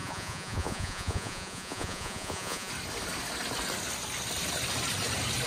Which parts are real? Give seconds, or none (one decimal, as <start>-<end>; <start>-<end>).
2.7-5.5